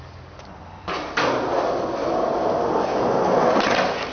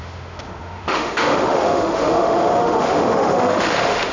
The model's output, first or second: second